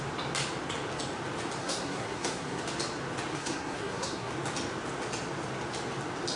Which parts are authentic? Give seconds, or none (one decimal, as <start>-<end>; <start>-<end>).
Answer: 0.0-1.6; 2.6-3.3; 4.3-6.4